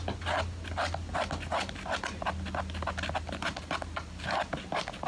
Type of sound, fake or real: real